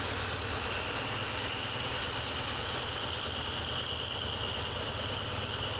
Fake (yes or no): no